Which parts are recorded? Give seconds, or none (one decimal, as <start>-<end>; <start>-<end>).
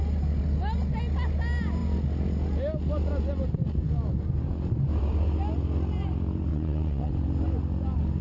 0.0-6.5; 7.1-8.2